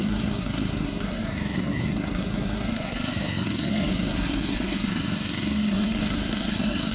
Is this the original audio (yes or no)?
no